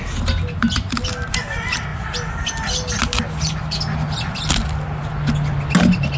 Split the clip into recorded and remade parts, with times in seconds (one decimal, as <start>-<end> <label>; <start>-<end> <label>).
0.0-6.2 recorded